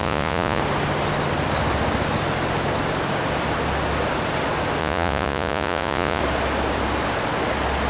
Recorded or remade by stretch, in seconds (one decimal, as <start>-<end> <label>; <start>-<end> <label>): 0.0-0.6 remade; 0.6-4.8 recorded; 4.8-6.2 remade; 6.2-7.9 recorded